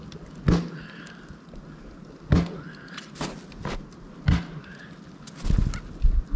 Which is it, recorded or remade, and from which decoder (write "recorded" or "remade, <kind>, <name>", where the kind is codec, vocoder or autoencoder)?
recorded